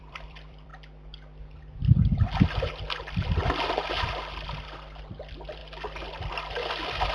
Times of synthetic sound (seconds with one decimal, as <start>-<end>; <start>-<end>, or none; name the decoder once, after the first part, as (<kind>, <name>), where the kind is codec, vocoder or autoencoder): 0.0-0.7 (vocoder, BigVGAN v2); 5.0-5.6; 6.3-7.1